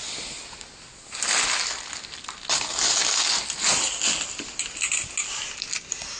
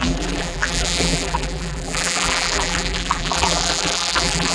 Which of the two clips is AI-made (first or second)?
second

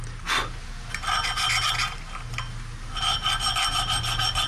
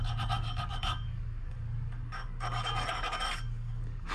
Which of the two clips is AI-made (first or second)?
second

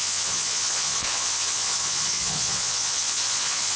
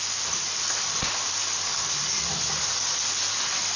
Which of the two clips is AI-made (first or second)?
first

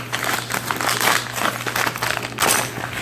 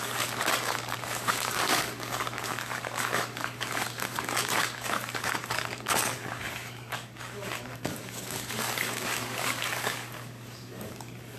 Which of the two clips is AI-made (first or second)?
second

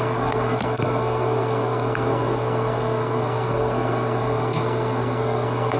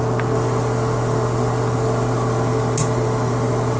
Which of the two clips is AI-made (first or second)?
first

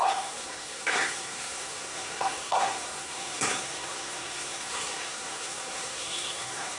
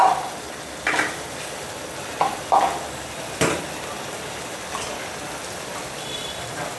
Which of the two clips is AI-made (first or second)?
first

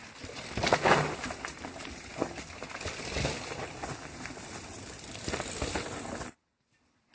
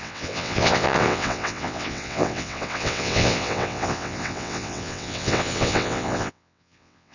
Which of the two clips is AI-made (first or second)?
second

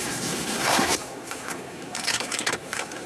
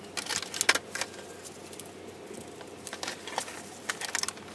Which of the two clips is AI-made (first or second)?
first